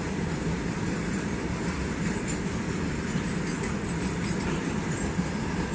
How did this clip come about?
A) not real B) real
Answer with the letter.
B